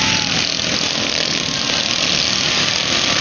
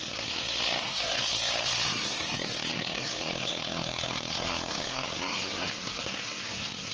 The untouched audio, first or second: first